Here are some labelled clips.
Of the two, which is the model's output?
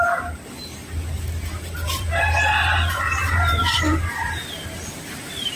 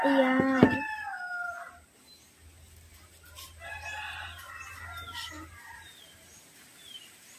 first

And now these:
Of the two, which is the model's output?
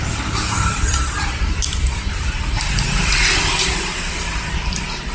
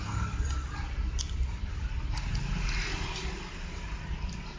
first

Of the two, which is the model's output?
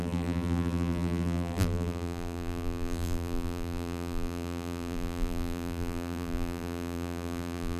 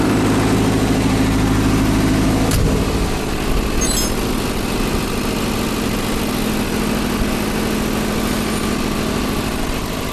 first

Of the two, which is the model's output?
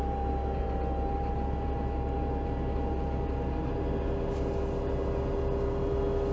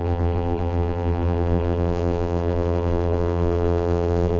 second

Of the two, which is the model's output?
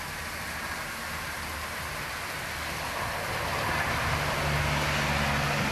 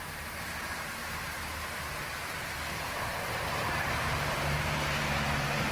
second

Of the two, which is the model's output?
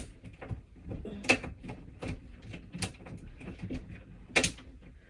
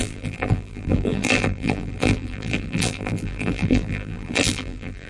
second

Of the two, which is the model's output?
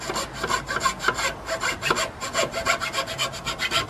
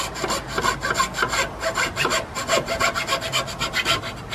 second